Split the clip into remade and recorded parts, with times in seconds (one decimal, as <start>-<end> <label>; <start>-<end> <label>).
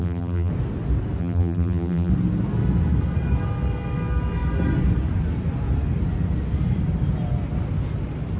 0.0-0.5 remade; 0.5-1.2 recorded; 1.2-2.1 remade; 2.1-8.4 recorded